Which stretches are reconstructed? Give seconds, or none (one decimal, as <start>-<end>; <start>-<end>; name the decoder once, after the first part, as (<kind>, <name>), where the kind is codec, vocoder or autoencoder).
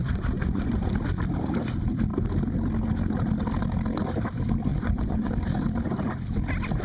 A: 0.0-0.9 (vocoder, Vocos); 4.7-5.3